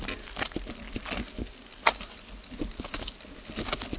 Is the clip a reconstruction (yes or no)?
no